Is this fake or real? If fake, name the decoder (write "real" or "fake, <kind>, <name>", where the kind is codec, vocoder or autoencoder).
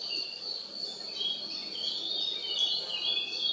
real